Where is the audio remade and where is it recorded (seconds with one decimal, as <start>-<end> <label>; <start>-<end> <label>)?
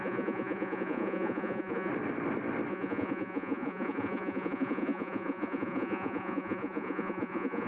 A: 0.0-1.9 remade; 1.9-2.7 recorded; 2.7-7.7 remade